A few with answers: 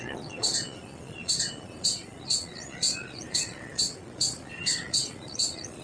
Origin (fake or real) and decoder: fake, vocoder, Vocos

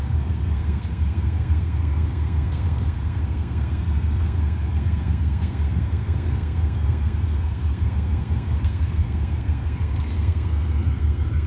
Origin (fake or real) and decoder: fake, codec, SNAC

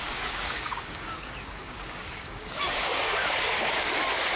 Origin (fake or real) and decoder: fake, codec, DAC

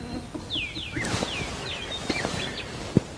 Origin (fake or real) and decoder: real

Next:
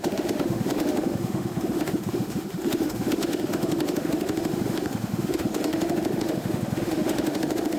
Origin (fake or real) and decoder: fake, autoencoder, DAC-VAE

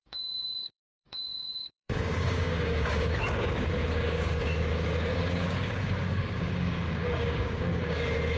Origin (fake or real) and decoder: fake, codec, DAC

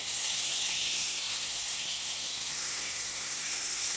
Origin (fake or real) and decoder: fake, codec, SNAC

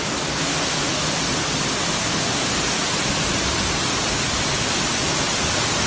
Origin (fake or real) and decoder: real